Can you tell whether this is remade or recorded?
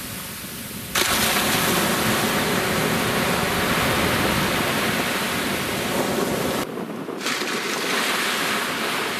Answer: recorded